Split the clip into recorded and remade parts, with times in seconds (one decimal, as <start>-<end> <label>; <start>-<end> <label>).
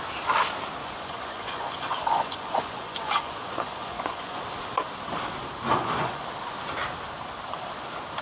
0.0-0.8 recorded; 0.8-4.4 remade; 4.4-5.7 recorded; 5.7-6.2 remade; 6.2-8.2 recorded